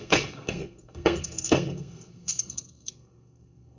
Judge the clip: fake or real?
fake